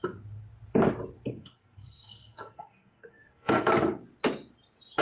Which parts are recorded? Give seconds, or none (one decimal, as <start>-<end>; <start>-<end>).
0.0-1.3; 3.7-5.0